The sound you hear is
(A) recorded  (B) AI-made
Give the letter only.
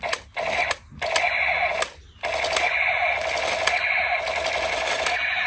A